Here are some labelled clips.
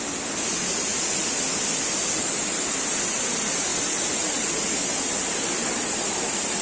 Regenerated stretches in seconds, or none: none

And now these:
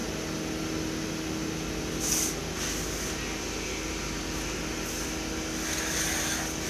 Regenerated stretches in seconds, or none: none

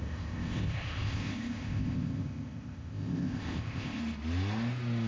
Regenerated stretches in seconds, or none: 0.0-4.0 (codec, ZipCodec)

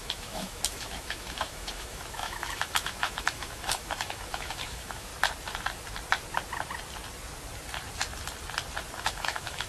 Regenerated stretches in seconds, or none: 0.0-5.1 (autoencoder, DAC-VAE); 9.0-9.7

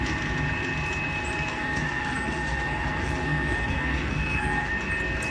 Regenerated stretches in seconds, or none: 1.5-4.7 (codec, SNAC)

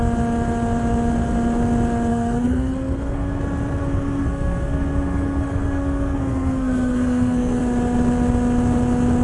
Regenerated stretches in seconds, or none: 2.1-3.4 (codec, SNAC); 3.8-7.6

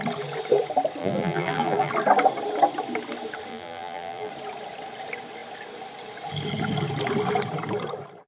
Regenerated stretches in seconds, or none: 1.0-1.9 (vocoder, BigVGAN v2); 3.5-4.3